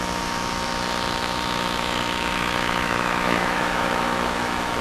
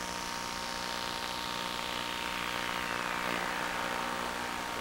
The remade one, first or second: first